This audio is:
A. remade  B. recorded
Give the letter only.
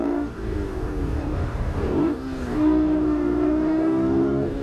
A